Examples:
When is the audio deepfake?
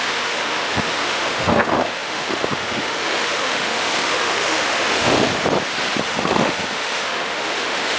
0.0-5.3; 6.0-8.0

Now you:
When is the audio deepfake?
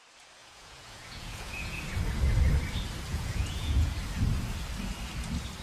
0.4-1.8; 3.1-3.9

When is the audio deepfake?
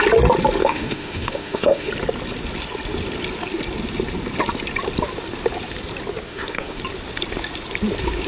0.6-1.9; 6.3-6.8